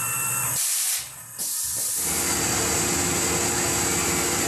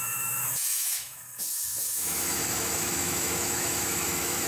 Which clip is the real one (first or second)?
first